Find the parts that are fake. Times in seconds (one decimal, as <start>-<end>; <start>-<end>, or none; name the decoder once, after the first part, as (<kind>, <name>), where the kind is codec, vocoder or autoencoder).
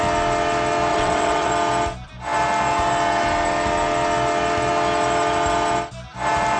0.9-1.5 (vocoder, WaveNeXt)